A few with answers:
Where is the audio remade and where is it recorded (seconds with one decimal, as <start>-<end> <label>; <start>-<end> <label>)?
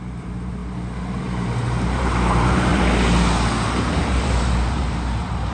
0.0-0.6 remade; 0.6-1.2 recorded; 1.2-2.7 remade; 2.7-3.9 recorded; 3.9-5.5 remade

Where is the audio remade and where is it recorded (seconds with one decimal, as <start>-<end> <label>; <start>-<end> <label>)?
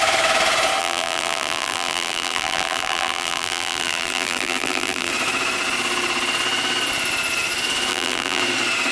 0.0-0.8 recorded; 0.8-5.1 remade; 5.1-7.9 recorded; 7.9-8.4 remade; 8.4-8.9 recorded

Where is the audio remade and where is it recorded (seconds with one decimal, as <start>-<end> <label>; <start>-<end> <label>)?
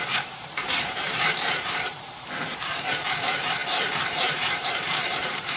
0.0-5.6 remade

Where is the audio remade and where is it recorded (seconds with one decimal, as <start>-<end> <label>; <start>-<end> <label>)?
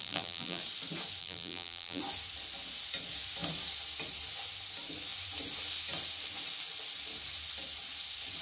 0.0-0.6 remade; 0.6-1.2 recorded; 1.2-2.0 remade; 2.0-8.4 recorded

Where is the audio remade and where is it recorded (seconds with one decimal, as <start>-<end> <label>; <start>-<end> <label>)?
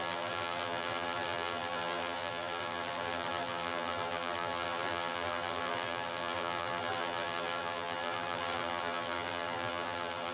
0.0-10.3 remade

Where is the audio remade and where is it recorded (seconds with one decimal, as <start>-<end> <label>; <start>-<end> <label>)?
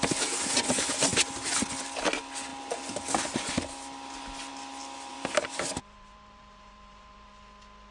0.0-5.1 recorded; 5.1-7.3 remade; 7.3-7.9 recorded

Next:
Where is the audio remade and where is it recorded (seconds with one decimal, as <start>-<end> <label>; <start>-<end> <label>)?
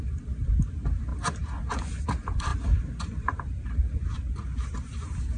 0.0-2.5 recorded; 2.5-3.1 remade; 3.1-5.4 recorded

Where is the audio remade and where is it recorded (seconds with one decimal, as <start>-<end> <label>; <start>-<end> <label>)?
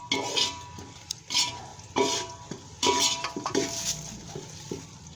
0.0-1.7 recorded; 1.7-4.8 remade; 4.8-5.2 recorded